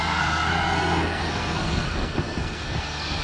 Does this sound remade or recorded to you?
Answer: remade